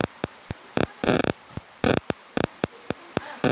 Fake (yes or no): yes